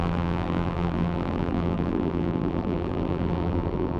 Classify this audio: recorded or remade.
remade